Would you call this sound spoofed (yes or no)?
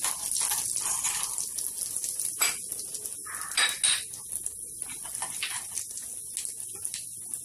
no